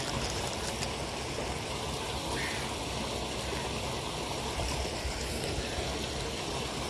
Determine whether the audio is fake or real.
real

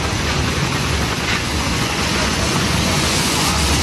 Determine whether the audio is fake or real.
fake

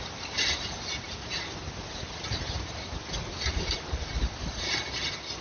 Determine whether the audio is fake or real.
real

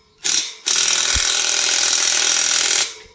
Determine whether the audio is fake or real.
real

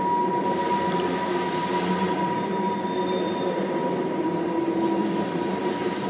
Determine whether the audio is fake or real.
real